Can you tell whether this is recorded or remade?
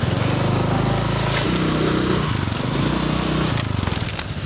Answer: recorded